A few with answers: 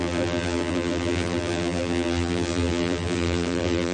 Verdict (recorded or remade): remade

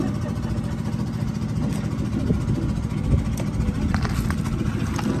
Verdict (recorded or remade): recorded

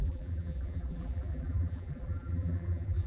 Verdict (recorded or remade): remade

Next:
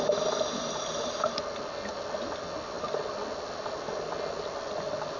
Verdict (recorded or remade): recorded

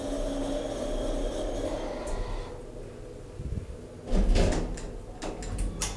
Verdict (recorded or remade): recorded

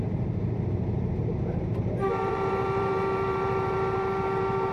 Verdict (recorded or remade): remade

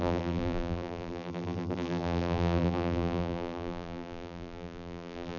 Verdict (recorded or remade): remade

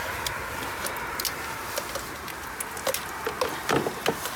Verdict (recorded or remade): recorded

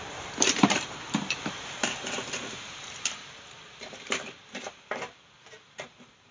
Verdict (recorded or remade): remade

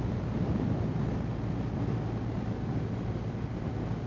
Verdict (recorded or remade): recorded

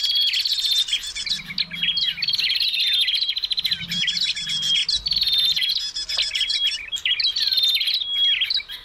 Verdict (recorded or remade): recorded